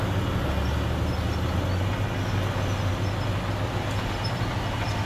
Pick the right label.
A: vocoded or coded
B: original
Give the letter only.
B